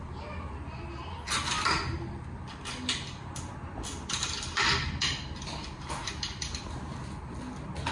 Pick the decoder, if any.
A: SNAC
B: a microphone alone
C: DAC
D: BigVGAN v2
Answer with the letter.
B